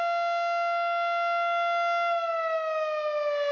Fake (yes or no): no